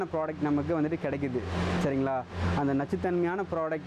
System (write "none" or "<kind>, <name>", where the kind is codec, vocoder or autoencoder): none